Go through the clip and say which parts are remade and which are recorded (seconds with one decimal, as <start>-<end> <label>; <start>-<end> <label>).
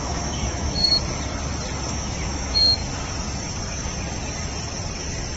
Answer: 0.0-0.8 remade; 0.8-1.9 recorded; 1.9-2.8 remade; 2.8-5.4 recorded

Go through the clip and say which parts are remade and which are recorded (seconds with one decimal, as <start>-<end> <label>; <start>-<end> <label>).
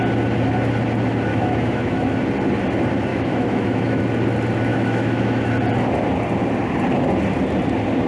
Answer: 0.0-1.3 recorded; 1.3-2.2 remade; 2.2-3.1 recorded; 3.1-4.0 remade; 4.0-4.7 recorded; 4.7-5.5 remade; 5.5-8.1 recorded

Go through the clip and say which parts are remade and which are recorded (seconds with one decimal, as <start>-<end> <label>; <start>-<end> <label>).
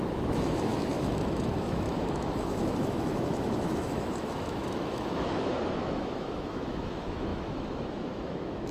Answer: 0.0-8.7 remade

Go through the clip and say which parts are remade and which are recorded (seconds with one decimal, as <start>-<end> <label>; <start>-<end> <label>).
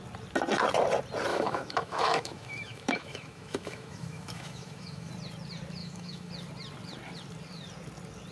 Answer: 0.0-1.3 recorded; 1.3-5.1 remade; 5.1-5.8 recorded; 5.8-6.3 remade; 6.3-8.3 recorded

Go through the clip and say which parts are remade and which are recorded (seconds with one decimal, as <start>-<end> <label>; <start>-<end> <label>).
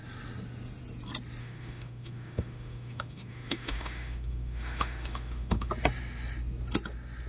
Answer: 0.0-1.4 recorded; 1.4-5.7 remade; 5.7-7.3 recorded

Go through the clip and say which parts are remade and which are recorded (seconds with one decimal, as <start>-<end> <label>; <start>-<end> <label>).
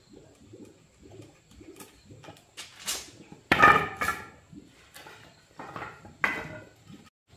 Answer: 0.0-7.4 recorded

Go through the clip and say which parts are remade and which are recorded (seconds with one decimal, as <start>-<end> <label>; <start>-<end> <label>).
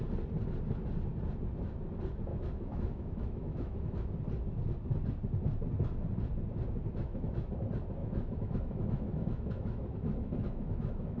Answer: 0.0-2.3 recorded; 2.3-4.1 remade; 4.1-6.9 recorded; 6.9-7.5 remade; 7.5-8.0 recorded; 8.0-11.2 remade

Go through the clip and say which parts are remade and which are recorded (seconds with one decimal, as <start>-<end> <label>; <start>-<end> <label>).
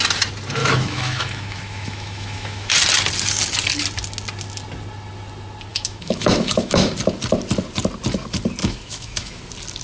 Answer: 0.0-0.6 recorded; 0.6-2.7 remade; 2.7-5.7 recorded; 5.7-6.9 remade; 6.9-8.6 recorded; 8.6-9.4 remade; 9.4-9.8 recorded